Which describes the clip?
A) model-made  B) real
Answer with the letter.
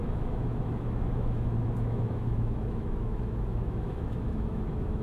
A